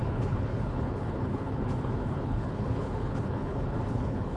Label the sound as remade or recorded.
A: remade